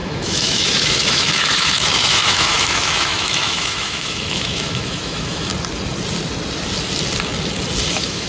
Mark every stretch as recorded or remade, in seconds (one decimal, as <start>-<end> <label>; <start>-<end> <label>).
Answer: 0.0-5.5 remade; 5.5-7.9 recorded; 7.9-8.3 remade